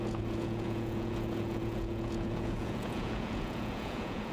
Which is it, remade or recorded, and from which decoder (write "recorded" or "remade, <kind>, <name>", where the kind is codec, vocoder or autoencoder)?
remade, vocoder, Vocos